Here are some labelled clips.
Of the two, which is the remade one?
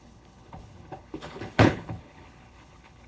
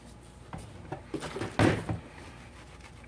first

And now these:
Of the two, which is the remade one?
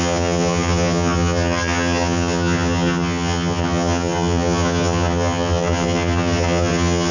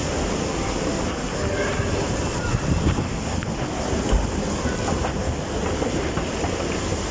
first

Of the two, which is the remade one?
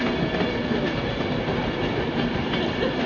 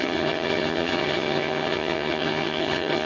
second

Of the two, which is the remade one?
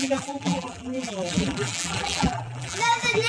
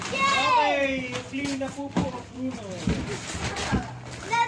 first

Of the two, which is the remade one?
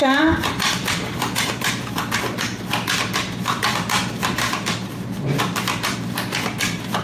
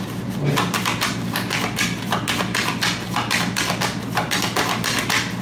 first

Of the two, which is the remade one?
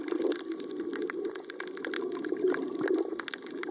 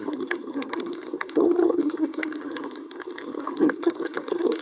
second